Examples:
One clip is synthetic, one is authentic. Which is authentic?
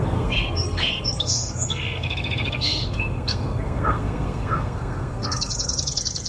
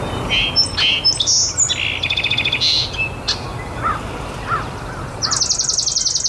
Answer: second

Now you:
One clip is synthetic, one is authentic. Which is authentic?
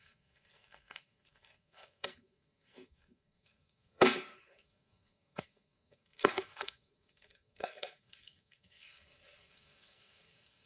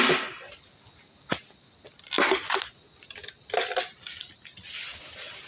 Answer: second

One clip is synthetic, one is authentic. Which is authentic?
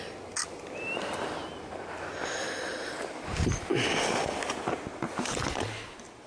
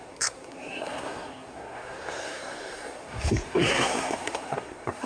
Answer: first